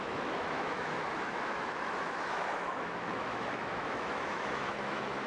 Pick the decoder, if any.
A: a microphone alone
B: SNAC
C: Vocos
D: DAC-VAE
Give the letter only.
D